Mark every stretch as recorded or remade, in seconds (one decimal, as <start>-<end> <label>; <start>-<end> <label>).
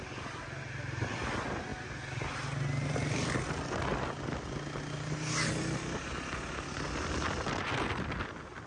0.0-8.7 recorded